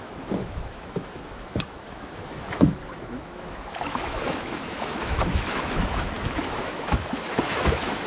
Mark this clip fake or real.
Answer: fake